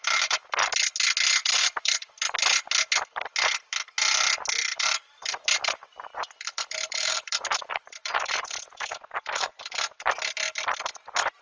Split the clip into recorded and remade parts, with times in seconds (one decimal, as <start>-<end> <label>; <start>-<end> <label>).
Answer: 0.0-1.4 recorded; 1.4-2.1 remade; 2.1-4.7 recorded; 4.7-9.6 remade; 9.6-11.4 recorded